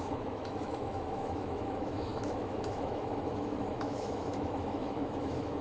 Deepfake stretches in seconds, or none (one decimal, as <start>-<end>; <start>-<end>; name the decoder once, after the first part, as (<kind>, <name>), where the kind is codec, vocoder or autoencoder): 0.0-5.6 (autoencoder, DAC-VAE)